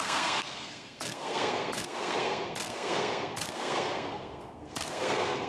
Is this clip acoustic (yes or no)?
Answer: no